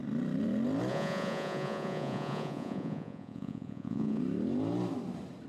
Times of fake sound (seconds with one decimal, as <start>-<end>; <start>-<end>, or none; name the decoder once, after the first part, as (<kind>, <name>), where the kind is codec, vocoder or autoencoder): 0.9-4.2 (vocoder, Vocos)